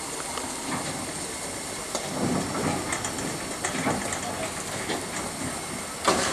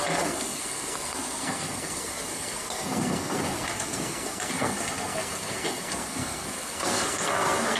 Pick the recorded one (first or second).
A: first